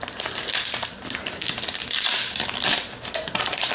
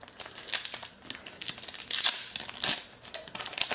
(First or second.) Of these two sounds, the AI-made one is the first